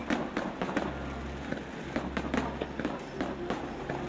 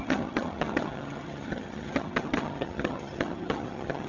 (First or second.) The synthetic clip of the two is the second